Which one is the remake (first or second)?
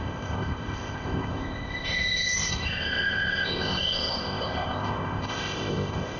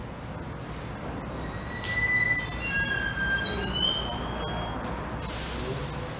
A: first